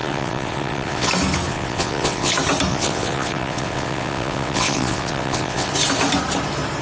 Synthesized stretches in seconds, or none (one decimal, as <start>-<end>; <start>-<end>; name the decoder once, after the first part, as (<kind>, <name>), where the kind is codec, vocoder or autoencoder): 0.0-1.1 (vocoder, WaveNeXt); 1.5-2.3; 2.7-5.7